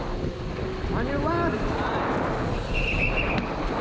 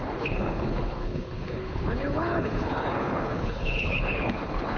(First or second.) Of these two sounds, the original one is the first